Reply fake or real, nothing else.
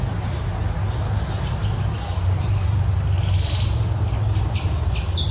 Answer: real